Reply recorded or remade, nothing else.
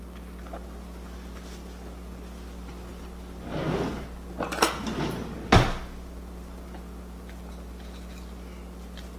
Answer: recorded